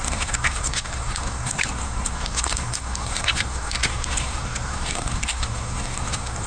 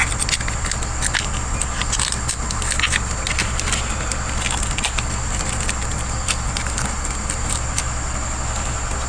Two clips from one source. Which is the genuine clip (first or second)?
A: second